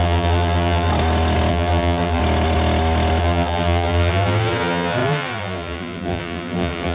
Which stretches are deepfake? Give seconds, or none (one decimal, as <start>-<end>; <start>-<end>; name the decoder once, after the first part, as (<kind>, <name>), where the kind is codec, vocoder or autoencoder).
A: 0.0-0.9 (vocoder, BigVGAN v2); 1.5-2.2; 3.2-6.9